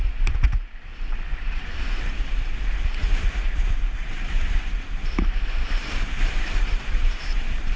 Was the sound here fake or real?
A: fake